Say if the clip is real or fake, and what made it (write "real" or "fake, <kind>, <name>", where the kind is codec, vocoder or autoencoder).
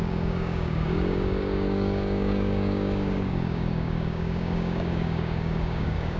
fake, codec, DAC